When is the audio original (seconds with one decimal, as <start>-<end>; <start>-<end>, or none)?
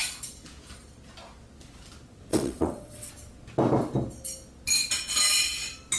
0.0-2.3; 3.1-6.0